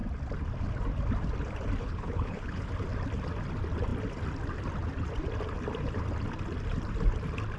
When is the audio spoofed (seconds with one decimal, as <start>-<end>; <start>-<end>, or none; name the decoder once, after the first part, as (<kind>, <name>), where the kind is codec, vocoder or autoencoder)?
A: 1.8-2.7 (codec, HILCodec)